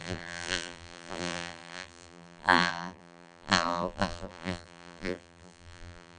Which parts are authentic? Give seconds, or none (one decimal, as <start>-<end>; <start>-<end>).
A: none